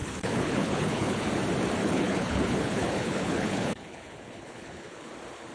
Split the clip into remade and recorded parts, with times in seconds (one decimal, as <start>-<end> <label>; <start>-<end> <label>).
0.0-1.3 remade; 1.3-1.8 recorded; 1.8-5.1 remade; 5.1-5.5 recorded